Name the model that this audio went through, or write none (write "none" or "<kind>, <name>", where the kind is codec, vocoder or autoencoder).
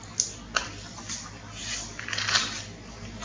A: none